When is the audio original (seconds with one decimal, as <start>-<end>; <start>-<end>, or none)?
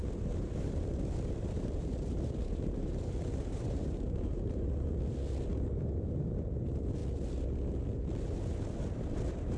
5.1-9.6